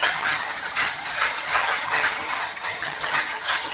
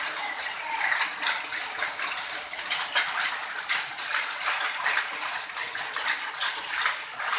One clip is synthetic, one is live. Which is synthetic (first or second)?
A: first